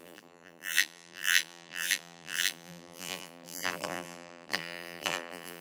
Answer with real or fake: fake